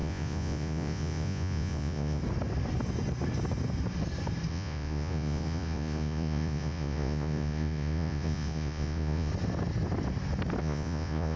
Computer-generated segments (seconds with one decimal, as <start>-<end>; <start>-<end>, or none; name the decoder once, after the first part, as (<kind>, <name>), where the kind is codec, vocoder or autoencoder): 0.0-2.2 (vocoder, Vocos); 4.5-9.3; 10.6-11.4